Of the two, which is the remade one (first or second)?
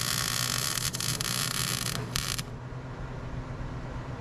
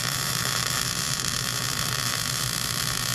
second